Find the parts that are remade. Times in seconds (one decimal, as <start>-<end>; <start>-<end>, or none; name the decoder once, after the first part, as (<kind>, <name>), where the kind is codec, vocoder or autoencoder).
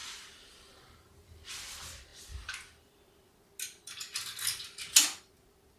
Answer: 0.0-1.5 (vocoder, BigVGAN v2)